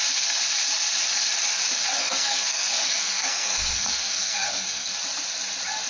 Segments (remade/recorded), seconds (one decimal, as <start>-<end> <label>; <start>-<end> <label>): 0.0-2.0 recorded; 2.0-4.9 remade; 4.9-5.9 recorded